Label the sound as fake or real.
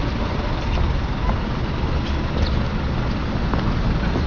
real